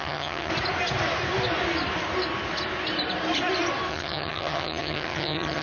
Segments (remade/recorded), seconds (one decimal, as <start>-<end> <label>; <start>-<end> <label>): 0.0-0.5 remade; 0.5-3.9 recorded; 3.9-5.6 remade